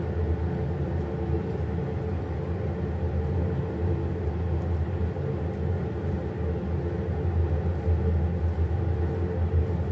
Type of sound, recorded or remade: recorded